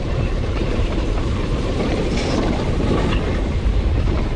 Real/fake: fake